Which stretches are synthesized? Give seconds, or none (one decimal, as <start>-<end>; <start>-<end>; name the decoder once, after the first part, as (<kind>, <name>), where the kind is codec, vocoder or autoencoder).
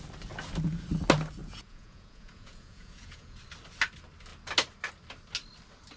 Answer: 1.4-3.4 (vocoder, Vocos)